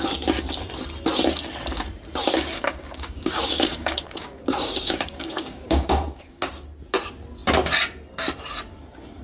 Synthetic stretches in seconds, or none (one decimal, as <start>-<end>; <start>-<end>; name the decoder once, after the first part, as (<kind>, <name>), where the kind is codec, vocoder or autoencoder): 2.2-6.5 (codec, DAC)